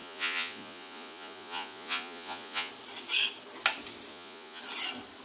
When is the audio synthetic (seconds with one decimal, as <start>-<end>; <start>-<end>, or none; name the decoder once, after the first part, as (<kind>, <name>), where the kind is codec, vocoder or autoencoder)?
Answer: 0.0-2.7 (vocoder, Vocos); 4.1-4.6

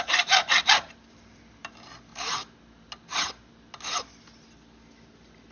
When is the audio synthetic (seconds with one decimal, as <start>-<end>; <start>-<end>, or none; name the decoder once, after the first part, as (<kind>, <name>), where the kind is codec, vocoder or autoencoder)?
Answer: none

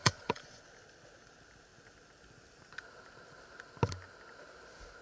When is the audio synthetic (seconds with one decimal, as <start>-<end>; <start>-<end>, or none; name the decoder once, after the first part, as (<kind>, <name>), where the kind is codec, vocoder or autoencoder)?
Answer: 0.0-0.6 (vocoder, Vocos)